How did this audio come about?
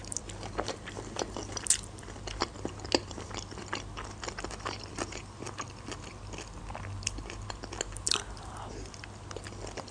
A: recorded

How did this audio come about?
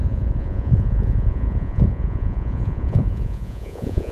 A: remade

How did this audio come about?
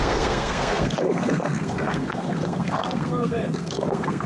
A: remade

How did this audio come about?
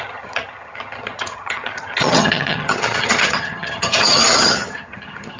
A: remade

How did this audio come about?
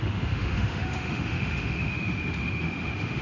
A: remade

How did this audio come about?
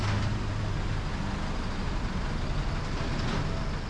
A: recorded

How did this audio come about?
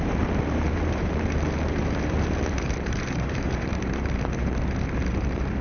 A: remade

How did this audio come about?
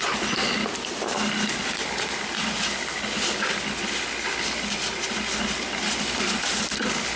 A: recorded